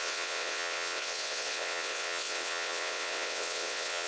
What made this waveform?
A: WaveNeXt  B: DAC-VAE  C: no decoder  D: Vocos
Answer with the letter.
A